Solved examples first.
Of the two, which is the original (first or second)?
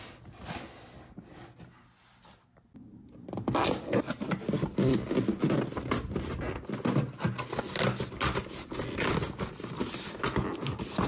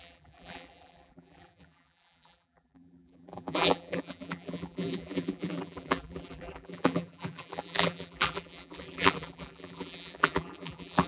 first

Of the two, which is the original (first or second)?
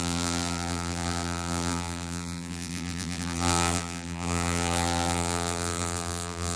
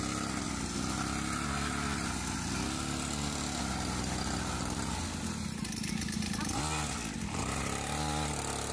second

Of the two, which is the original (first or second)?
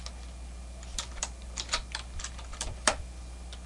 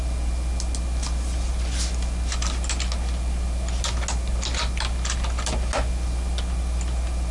second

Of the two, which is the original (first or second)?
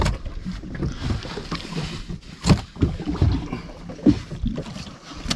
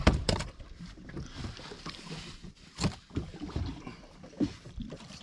first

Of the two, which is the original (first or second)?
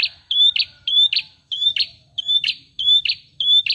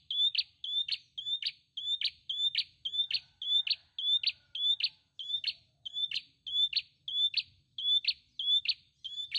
second